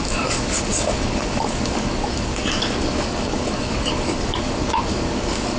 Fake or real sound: fake